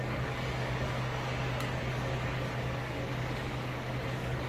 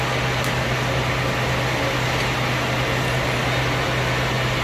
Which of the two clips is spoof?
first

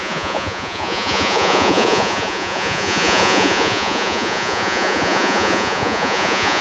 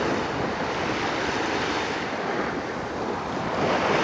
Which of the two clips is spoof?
first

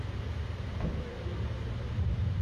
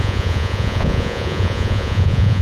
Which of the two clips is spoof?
second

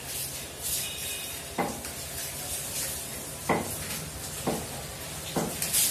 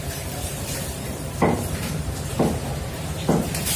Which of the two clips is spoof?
second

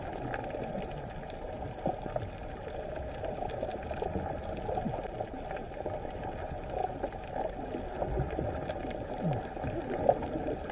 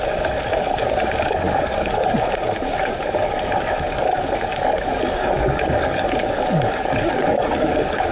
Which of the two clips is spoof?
second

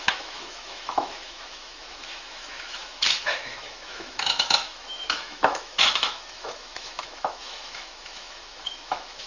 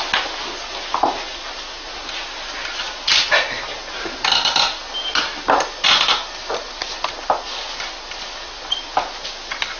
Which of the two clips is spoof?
first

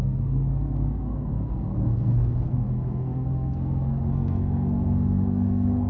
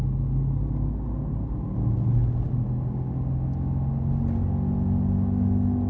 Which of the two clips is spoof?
first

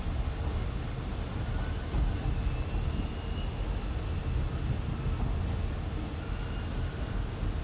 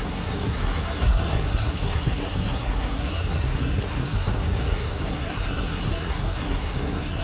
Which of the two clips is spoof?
second